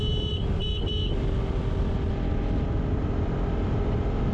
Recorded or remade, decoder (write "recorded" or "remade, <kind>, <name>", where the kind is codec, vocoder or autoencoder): recorded